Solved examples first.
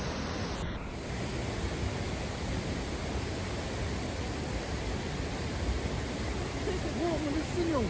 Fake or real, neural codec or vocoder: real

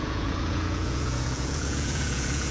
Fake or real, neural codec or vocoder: fake, vocoder, Vocos